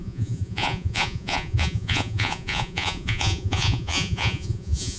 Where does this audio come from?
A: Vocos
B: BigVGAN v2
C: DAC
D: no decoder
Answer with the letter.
A